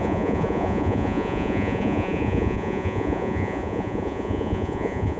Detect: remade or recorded remade